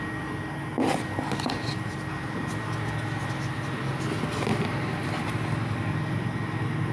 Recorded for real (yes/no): yes